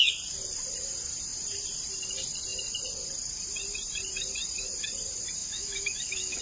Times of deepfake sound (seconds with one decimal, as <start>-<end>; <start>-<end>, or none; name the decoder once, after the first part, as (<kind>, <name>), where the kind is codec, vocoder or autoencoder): 5.4-6.4 (autoencoder, DAC-VAE)